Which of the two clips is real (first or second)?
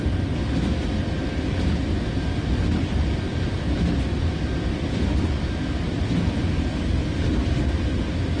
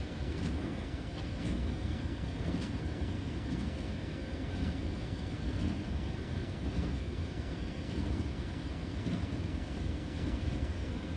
first